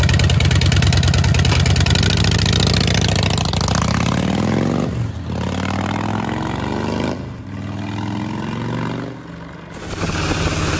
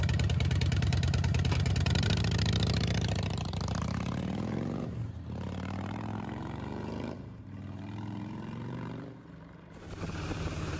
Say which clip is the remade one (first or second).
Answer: second